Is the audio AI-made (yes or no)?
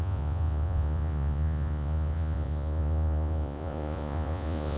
yes